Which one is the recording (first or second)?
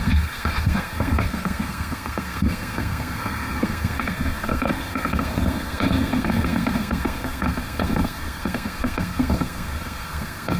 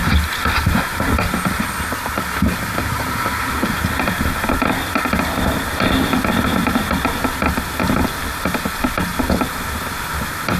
second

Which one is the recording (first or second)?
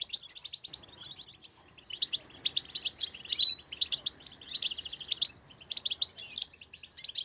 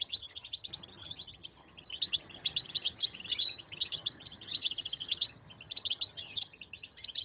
first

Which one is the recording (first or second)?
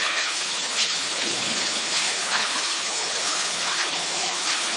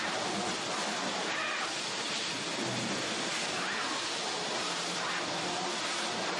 second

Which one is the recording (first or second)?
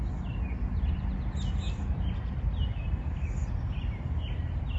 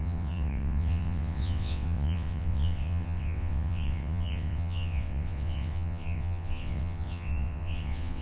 first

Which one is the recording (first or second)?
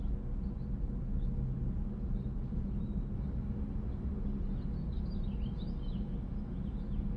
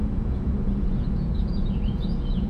first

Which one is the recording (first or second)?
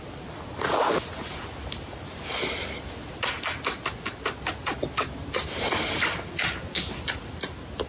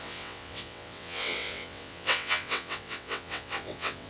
first